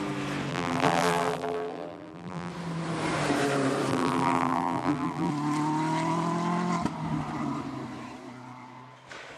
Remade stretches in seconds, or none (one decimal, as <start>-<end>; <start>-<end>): 0.5-2.5; 3.9-5.3